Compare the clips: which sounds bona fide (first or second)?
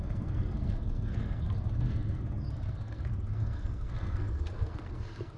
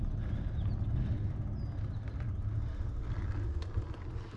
second